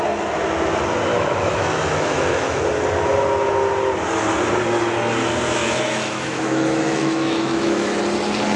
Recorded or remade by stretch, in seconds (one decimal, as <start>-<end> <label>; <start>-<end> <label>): 0.0-1.1 recorded; 1.1-2.6 remade; 2.6-5.6 recorded; 5.6-8.0 remade; 8.0-8.6 recorded